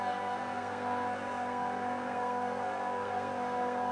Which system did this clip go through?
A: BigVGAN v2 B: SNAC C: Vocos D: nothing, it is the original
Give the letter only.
B